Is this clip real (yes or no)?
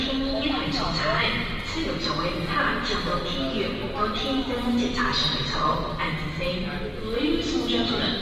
yes